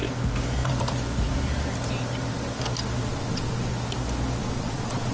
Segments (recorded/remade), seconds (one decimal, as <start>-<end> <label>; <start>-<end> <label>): 0.0-3.1 recorded; 3.1-3.7 remade; 3.7-4.4 recorded; 4.4-5.1 remade